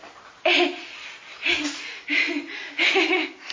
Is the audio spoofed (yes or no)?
no